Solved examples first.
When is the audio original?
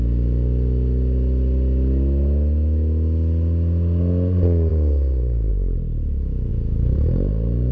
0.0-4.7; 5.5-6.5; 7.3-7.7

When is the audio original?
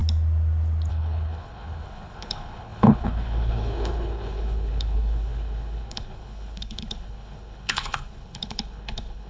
0.0-0.9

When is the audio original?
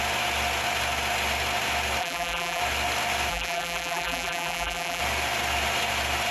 0.0-2.0; 2.6-3.3; 5.0-6.3